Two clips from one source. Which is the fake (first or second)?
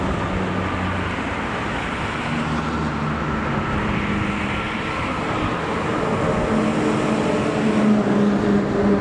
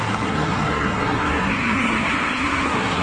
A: second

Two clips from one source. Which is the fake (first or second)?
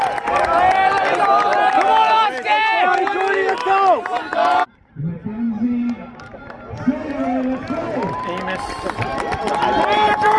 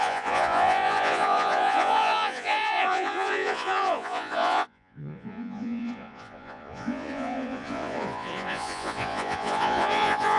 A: second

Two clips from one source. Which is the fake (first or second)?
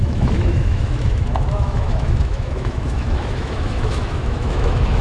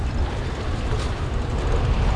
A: first